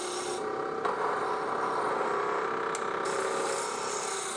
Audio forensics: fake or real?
real